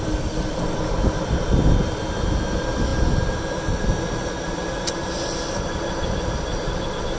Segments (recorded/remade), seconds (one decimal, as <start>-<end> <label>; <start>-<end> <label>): 0.0-7.2 recorded